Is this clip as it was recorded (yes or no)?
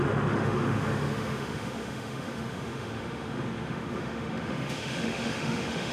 no